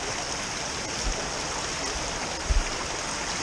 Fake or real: real